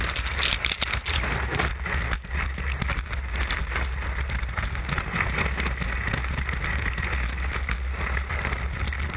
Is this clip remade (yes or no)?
no